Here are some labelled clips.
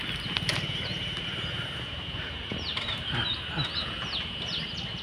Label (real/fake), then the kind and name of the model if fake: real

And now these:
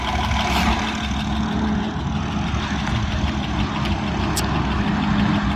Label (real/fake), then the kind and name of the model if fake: real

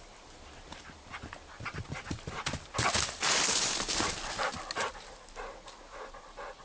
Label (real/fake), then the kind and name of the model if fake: real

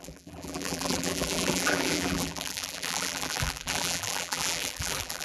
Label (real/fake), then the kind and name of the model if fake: fake, vocoder, BigVGAN v2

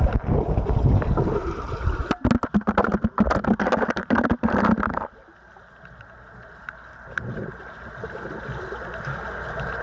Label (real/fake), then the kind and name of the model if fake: real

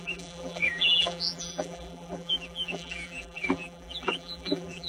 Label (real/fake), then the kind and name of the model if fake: fake, vocoder, BigVGAN v2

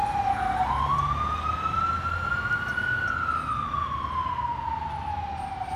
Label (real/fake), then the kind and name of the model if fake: real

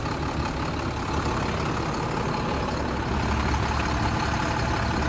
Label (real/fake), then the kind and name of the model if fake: real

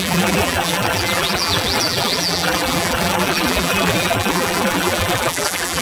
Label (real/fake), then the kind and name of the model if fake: fake, vocoder, BigVGAN v2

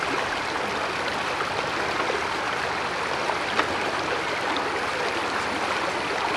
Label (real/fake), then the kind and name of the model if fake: real